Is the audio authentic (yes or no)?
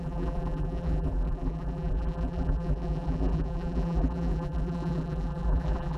no